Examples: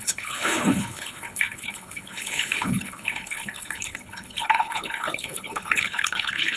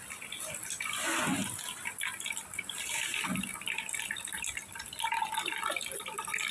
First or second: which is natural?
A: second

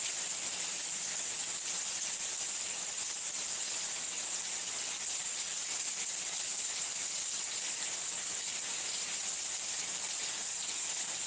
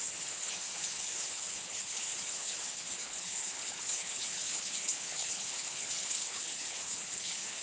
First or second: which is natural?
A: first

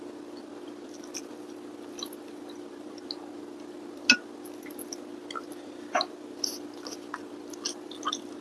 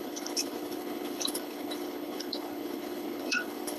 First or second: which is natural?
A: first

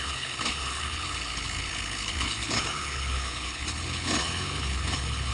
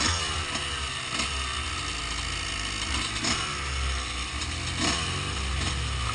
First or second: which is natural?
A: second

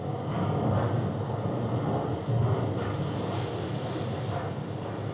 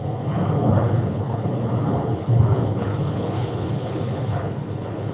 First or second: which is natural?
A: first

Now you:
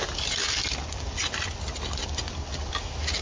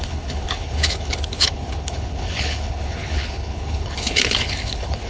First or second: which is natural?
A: first